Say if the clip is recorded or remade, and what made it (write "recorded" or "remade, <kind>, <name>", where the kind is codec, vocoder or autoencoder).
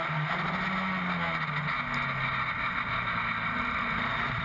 recorded